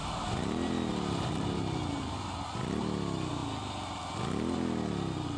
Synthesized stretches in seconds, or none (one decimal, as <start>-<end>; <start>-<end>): none